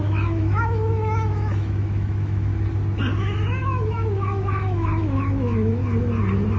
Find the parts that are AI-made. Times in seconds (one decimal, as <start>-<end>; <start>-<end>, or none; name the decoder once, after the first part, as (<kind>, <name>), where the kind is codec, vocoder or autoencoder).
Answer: 0.0-2.5 (autoencoder, DAC-VAE); 3.2-5.8